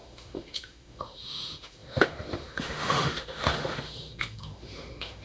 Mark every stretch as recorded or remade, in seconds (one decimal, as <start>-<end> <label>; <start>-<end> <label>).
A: 0.0-5.2 remade